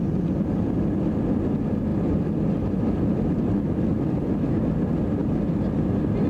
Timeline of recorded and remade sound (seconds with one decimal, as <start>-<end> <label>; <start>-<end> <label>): 0.0-1.9 recorded; 1.9-4.7 remade; 4.7-5.2 recorded; 5.2-6.3 remade